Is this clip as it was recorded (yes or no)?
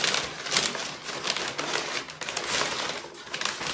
yes